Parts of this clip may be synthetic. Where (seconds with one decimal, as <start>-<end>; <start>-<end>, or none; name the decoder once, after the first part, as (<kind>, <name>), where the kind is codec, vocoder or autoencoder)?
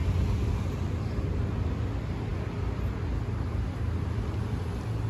none